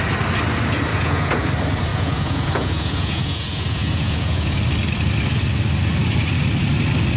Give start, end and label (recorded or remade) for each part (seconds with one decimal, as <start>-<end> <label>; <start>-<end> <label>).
0.0-0.9 recorded; 0.9-1.5 remade; 1.5-1.9 recorded; 1.9-4.6 remade; 4.6-7.2 recorded